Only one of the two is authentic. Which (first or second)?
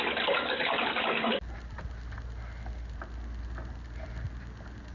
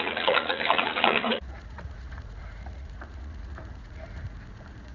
first